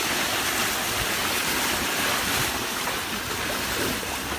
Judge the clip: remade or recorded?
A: recorded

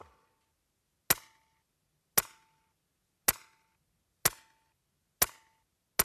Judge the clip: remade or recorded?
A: recorded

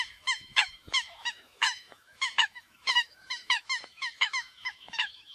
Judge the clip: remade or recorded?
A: remade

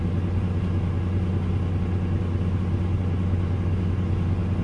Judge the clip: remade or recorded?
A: recorded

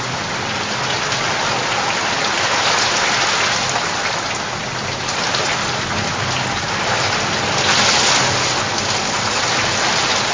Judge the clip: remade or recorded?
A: recorded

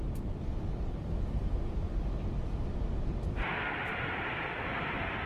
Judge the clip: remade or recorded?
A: recorded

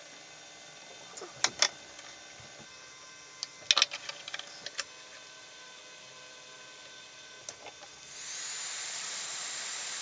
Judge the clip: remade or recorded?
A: recorded